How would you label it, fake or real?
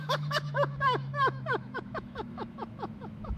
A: fake